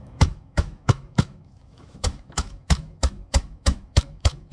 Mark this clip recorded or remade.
remade